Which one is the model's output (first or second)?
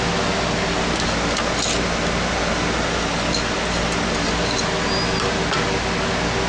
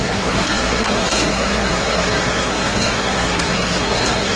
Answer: second